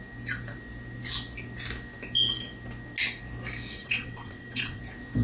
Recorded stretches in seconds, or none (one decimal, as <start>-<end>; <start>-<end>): 0.0-3.8; 4.8-5.2